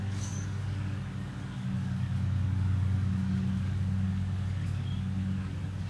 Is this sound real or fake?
fake